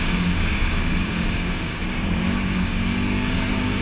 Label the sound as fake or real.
fake